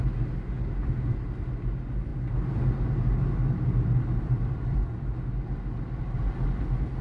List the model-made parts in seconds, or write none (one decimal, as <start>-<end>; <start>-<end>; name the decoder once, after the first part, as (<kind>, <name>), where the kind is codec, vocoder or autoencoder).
none